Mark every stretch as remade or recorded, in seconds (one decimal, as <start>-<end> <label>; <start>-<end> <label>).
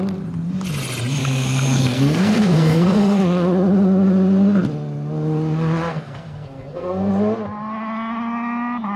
0.0-1.2 recorded; 1.2-3.2 remade; 3.2-5.9 recorded; 5.9-7.1 remade; 7.1-9.0 recorded